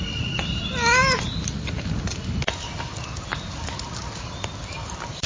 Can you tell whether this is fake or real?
real